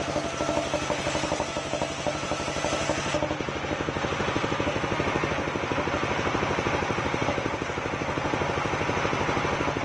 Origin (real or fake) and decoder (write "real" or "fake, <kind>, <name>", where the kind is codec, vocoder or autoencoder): real